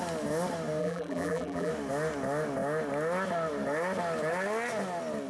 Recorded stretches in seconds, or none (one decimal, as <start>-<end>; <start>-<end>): 0.0-0.8; 1.7-5.3